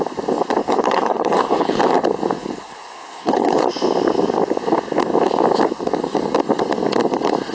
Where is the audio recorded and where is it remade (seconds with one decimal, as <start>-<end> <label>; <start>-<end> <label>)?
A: 0.0-0.6 recorded; 0.6-1.8 remade; 1.8-2.4 recorded; 2.4-3.7 remade; 3.7-7.5 recorded